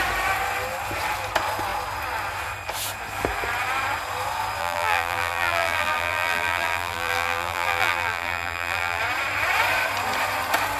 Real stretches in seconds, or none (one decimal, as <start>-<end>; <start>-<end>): 0.0-4.6; 9.0-10.8